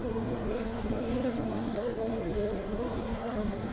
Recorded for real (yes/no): no